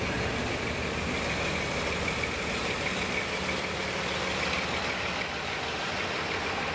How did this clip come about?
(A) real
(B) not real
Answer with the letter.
A